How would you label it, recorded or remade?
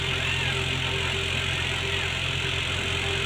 recorded